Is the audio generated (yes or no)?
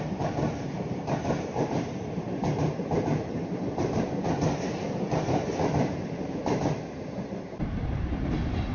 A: yes